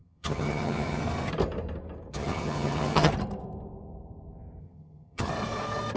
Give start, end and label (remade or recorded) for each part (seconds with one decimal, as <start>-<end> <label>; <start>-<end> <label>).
0.0-1.0 remade; 1.0-2.1 recorded; 2.1-3.1 remade; 3.1-4.6 recorded; 4.6-5.3 remade; 5.3-6.0 recorded